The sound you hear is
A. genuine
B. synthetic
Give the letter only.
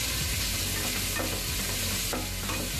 A